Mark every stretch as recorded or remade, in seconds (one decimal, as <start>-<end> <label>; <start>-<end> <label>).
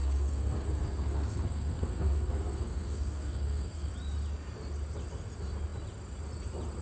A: 0.0-3.9 remade; 3.9-6.8 recorded